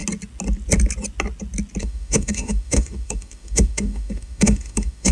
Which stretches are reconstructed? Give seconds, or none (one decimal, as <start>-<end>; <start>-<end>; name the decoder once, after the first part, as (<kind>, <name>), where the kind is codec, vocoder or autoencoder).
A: 1.8-5.1 (autoencoder, DAC-VAE)